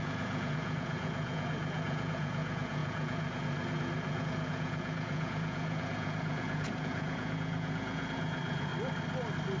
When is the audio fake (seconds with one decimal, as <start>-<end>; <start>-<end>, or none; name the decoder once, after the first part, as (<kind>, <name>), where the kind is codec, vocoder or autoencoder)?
0.0-8.7 (vocoder, Vocos)